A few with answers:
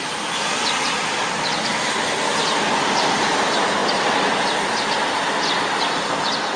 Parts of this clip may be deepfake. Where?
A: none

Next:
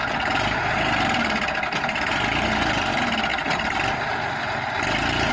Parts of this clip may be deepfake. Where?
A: none

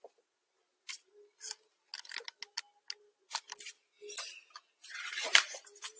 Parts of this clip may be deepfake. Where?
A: none

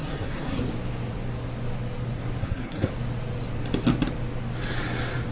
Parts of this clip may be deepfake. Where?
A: 0.0-0.6 (codec, SNAC); 2.4-2.9